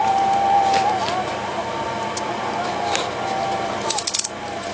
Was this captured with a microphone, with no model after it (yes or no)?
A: yes